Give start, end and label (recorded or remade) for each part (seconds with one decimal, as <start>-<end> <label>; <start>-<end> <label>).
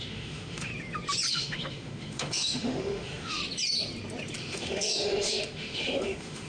0.0-0.7 remade; 0.7-1.3 recorded; 1.3-3.4 remade; 3.4-4.4 recorded; 4.4-6.5 remade